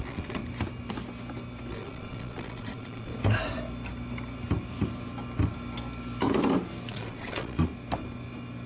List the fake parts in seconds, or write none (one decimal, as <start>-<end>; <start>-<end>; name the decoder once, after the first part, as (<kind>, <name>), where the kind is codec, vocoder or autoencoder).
0.0-0.4 (vocoder, Vocos); 1.7-3.1; 6.9-7.7